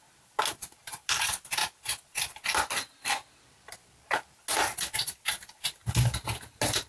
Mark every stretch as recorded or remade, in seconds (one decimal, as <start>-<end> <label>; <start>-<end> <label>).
0.0-6.9 recorded